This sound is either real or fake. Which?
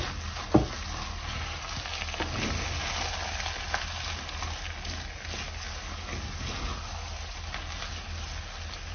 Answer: real